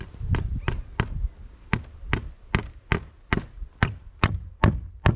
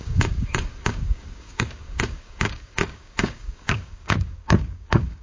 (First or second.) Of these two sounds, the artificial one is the second